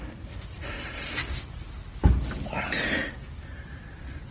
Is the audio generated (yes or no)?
no